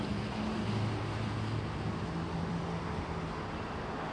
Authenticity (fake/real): real